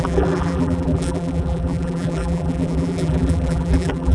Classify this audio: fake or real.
fake